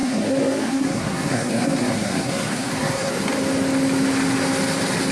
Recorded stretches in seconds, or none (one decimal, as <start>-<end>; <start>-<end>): 3.1-5.1